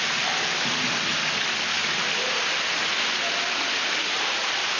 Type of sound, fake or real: real